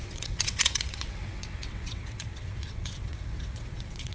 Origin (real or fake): fake